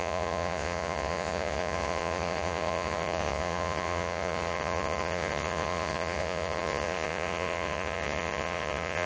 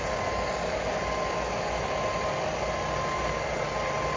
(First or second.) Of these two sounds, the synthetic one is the first